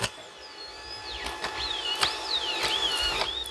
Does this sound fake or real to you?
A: real